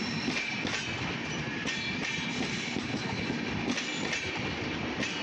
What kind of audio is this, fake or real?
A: real